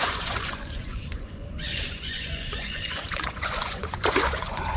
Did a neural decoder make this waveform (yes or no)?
yes